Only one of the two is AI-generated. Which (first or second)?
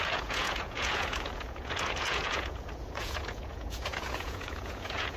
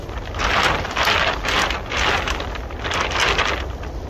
first